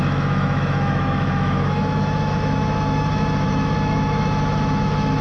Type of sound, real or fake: fake